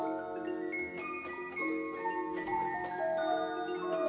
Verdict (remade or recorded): recorded